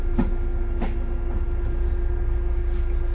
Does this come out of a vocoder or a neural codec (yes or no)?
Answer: no